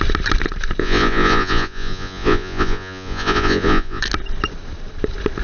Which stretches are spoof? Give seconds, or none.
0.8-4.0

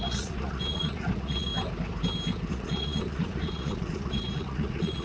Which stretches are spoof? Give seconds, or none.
0.0-1.5; 2.5-5.0